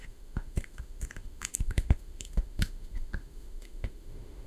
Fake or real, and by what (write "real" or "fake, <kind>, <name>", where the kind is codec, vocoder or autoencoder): fake, autoencoder, DAC-VAE